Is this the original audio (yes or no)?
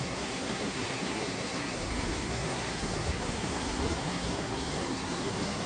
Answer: no